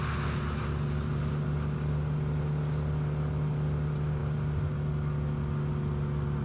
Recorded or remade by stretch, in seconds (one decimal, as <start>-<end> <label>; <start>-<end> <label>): 0.0-6.4 recorded